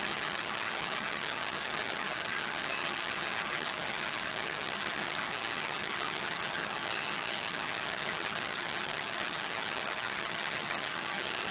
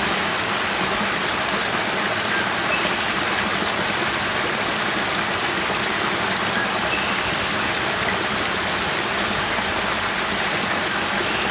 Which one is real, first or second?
second